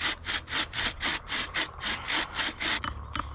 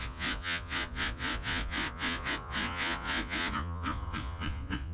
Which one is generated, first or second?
second